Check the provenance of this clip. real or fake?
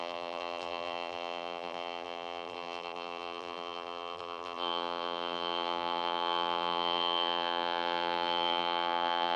fake